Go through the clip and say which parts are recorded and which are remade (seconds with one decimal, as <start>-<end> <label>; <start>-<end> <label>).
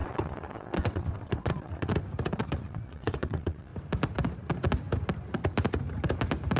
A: 0.0-1.9 remade; 1.9-2.4 recorded; 2.4-3.7 remade; 3.7-6.6 recorded